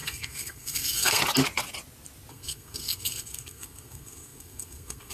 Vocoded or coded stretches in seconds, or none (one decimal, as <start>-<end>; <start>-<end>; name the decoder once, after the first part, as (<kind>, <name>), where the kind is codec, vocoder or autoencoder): 0.0-1.2 (codec, SNAC); 2.3-5.1